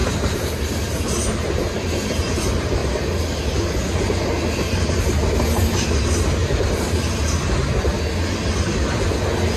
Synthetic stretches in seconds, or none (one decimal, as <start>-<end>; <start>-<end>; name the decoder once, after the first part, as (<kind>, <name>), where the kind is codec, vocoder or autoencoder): 0.0-1.6 (vocoder, BigVGAN v2); 6.4-7.0